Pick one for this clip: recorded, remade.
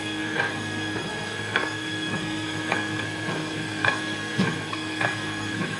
remade